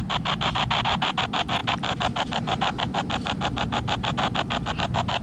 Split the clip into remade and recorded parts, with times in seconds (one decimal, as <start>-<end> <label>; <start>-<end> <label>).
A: 0.0-5.2 recorded